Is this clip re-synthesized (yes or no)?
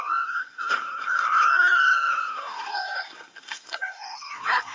yes